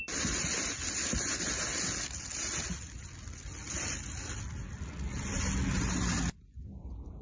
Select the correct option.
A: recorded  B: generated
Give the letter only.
A